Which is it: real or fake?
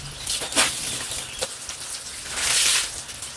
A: real